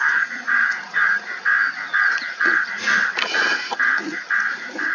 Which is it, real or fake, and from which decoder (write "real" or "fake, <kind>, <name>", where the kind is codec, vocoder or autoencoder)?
fake, vocoder, Vocos